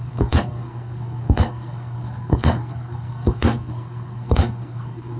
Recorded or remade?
remade